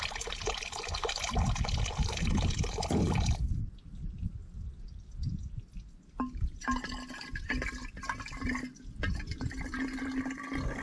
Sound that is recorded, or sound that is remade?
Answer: recorded